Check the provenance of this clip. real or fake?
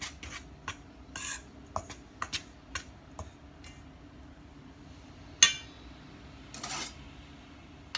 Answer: real